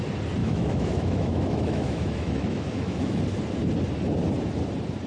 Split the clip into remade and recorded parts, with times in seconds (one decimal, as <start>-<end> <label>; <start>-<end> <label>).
0.0-0.4 recorded; 0.4-3.2 remade; 3.2-5.1 recorded